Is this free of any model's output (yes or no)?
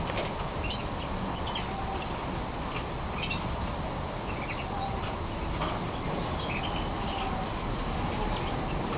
yes